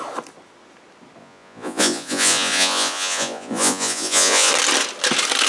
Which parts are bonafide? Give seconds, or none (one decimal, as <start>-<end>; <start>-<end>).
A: 0.0-1.2; 4.5-5.5